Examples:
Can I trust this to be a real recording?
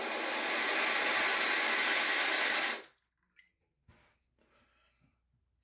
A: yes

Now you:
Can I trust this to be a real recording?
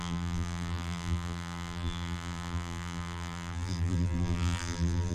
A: no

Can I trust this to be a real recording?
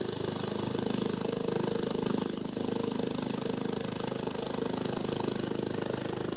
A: yes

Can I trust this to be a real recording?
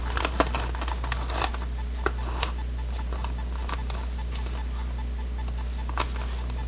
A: yes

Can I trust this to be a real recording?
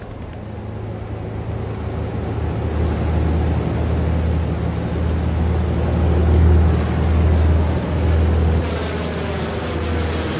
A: yes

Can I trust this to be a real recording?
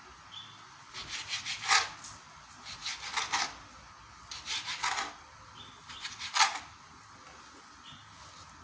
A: yes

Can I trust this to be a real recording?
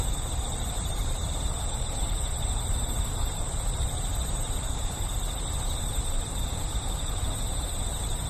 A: no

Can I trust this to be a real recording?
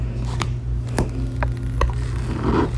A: yes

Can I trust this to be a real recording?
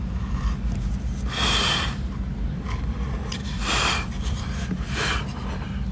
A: no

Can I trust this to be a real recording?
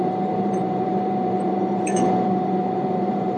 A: no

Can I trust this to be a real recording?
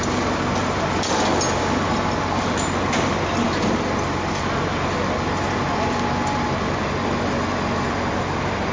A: yes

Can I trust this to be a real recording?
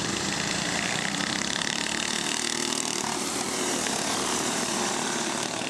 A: no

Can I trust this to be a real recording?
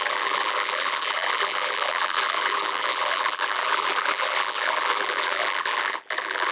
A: no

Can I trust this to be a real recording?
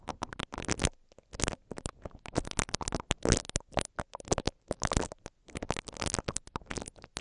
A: yes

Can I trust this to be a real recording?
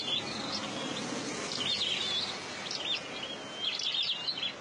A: yes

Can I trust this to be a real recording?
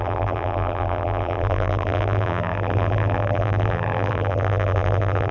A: no